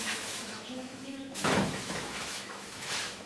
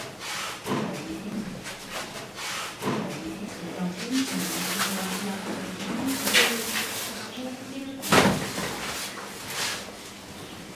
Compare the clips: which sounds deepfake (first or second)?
first